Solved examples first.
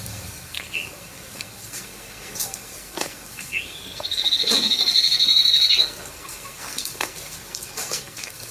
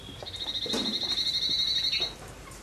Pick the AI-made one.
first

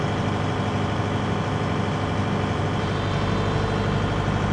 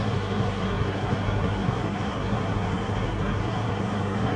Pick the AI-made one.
second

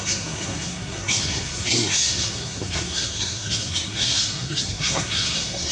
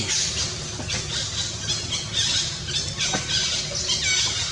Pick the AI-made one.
first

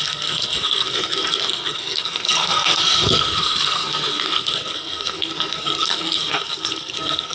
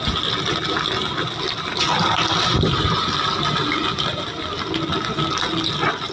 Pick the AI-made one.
first